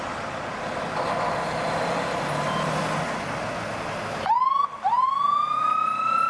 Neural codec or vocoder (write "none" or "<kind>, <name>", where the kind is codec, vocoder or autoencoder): none